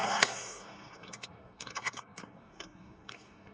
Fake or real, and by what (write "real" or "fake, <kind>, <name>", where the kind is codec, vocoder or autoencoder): fake, codec, SNAC